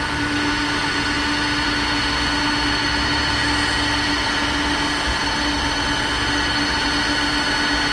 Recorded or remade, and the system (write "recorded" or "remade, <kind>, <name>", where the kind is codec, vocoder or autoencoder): recorded